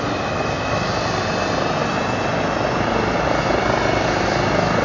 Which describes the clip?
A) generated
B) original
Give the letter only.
B